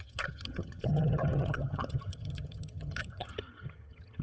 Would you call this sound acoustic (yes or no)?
no